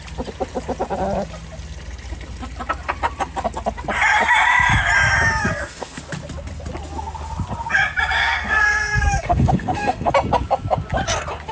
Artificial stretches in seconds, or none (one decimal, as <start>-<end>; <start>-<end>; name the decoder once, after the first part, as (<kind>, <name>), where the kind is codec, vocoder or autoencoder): 5.4-6.0 (codec, SNAC); 8.2-10.1